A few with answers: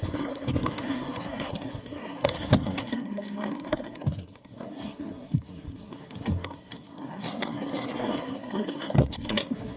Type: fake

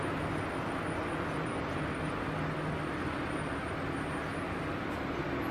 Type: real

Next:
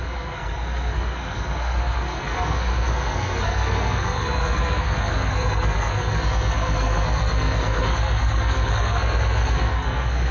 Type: fake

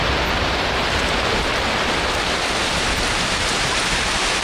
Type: real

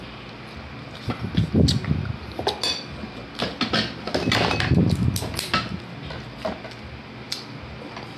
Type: real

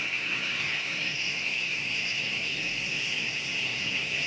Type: fake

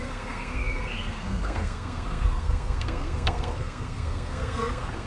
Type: fake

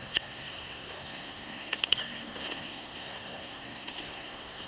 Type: fake